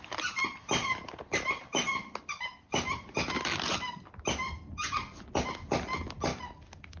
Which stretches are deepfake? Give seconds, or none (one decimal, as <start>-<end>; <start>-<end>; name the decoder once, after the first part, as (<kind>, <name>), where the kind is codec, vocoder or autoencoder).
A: none